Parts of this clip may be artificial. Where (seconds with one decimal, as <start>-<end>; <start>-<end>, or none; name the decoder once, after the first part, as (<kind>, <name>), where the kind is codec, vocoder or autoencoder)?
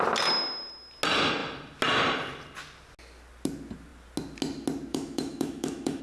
4.9-6.0 (autoencoder, DAC-VAE)